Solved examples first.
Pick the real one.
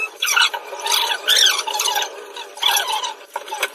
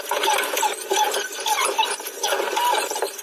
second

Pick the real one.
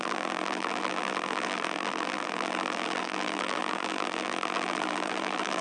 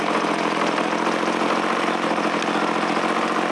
second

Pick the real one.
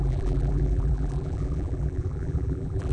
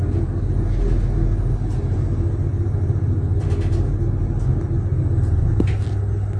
second